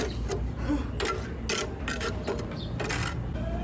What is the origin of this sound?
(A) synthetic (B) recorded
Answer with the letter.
B